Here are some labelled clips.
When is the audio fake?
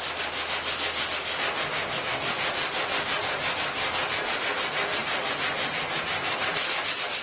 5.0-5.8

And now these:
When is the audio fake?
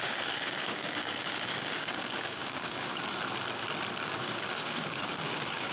0.0-3.0; 4.2-5.7